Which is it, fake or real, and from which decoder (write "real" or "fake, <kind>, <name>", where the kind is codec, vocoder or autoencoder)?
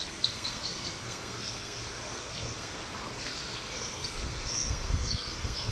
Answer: fake, codec, SNAC